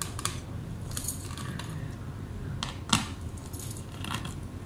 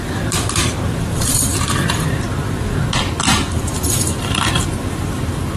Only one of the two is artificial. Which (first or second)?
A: second